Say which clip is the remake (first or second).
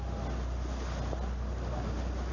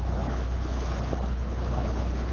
second